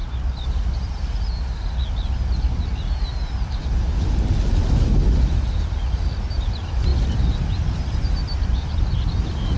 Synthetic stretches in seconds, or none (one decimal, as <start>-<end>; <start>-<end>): none